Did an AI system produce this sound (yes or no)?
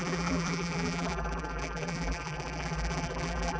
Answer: yes